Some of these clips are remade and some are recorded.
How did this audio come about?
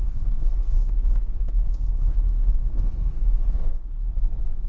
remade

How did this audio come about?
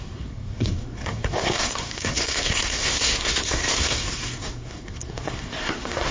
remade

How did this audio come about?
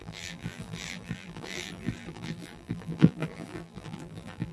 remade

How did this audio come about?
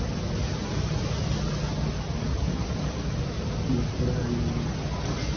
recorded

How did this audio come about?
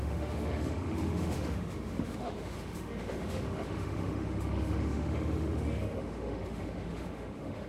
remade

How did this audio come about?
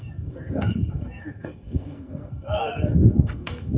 remade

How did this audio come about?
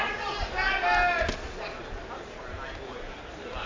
recorded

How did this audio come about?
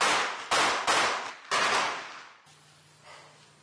recorded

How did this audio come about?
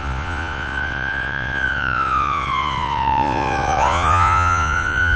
remade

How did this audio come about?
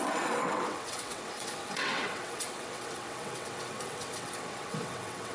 remade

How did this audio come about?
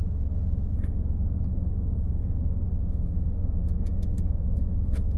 remade